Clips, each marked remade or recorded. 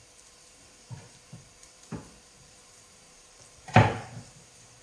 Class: remade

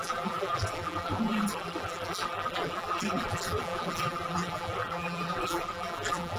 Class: remade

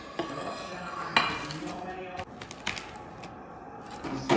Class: recorded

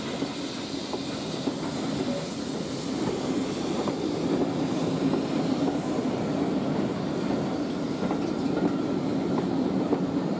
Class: recorded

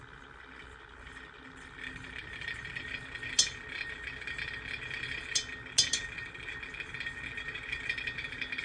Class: recorded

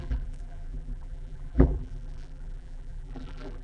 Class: remade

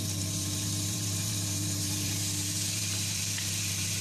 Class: remade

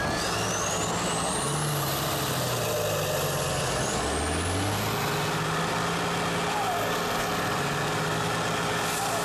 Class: recorded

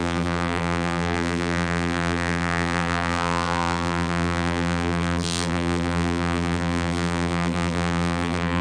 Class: remade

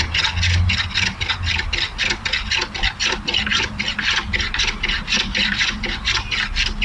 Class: recorded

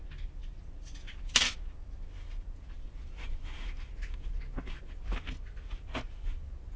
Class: recorded